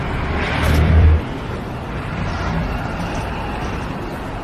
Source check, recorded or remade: remade